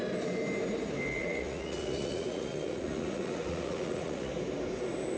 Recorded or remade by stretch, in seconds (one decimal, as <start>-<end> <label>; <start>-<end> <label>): 0.0-1.2 recorded; 1.2-4.3 remade; 4.3-5.2 recorded